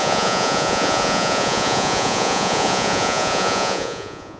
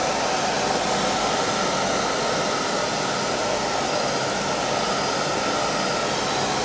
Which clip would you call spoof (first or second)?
first